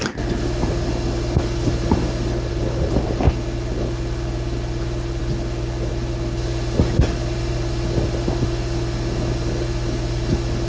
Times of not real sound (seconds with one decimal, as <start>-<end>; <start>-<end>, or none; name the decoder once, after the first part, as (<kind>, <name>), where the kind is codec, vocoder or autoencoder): none